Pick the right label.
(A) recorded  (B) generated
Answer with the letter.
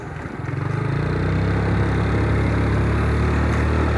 A